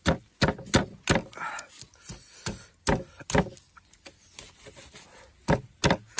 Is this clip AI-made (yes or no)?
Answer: no